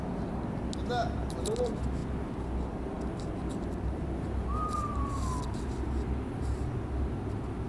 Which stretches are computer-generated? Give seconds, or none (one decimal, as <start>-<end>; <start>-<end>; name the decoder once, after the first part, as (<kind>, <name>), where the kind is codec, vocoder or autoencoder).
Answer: none